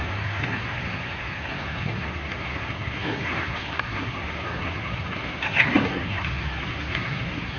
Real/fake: fake